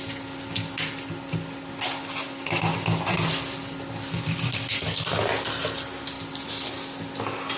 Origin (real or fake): real